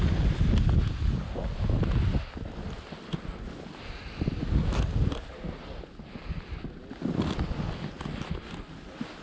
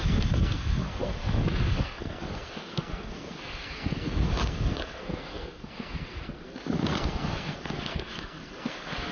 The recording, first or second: first